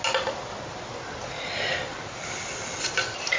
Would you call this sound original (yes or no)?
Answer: yes